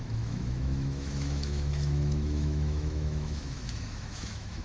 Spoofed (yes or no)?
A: yes